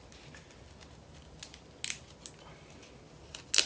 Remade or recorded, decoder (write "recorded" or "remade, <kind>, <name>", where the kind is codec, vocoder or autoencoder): recorded